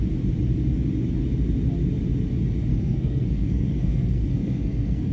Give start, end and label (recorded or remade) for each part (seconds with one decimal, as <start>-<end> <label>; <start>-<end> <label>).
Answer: 0.0-2.7 recorded; 2.7-5.1 remade